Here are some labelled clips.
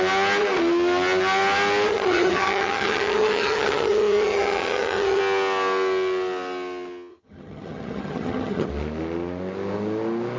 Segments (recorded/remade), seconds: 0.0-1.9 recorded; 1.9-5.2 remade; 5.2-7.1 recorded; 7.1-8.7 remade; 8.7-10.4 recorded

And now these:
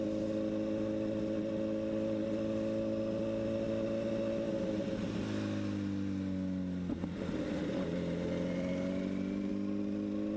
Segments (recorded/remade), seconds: 0.0-7.6 recorded; 7.6-9.5 remade; 9.5-10.4 recorded

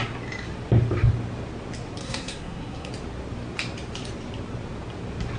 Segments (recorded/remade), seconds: 0.0-2.0 recorded; 2.0-2.9 remade; 2.9-5.4 recorded

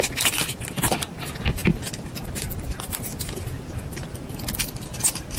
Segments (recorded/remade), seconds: 0.0-5.4 recorded

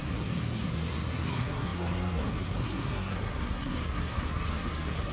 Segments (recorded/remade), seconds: 0.0-5.1 remade